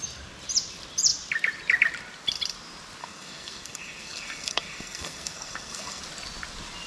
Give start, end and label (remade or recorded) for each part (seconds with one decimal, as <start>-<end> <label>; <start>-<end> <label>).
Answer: 0.0-3.0 recorded; 3.0-6.0 remade; 6.0-6.9 recorded